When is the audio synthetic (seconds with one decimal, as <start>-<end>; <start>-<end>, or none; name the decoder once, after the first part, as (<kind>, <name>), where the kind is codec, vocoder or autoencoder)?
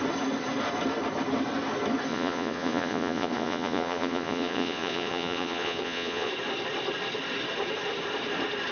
2.1-6.3 (vocoder, Vocos)